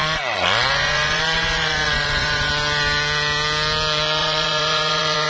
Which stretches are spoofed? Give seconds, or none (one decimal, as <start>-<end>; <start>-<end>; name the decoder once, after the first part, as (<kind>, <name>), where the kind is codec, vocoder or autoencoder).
0.0-2.5 (vocoder, Vocos); 4.2-5.3